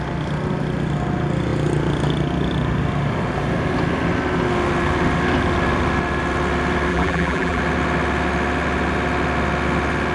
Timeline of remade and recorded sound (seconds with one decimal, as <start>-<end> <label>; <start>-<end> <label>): 0.0-6.9 recorded; 6.9-7.6 remade; 7.6-10.1 recorded